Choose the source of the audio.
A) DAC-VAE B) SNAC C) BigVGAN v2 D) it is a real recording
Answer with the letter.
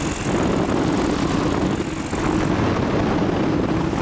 D